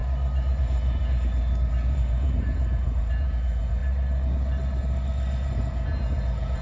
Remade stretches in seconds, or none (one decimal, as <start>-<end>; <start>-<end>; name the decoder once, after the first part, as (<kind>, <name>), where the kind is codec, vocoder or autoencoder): 0.6-3.8 (vocoder, Vocos); 5.5-6.6